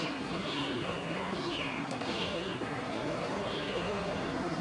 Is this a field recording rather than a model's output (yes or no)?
no